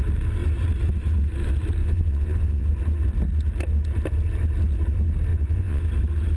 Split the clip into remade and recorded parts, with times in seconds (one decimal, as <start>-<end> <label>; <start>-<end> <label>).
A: 0.0-1.8 recorded; 1.8-2.7 remade; 2.7-5.3 recorded; 5.3-5.8 remade; 5.8-6.4 recorded